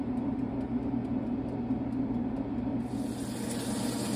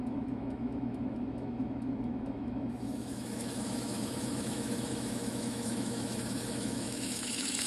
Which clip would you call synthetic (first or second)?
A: second